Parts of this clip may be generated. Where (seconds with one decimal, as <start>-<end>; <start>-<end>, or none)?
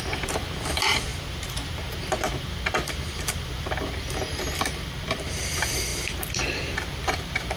0.0-1.1; 2.2-5.9; 6.9-7.6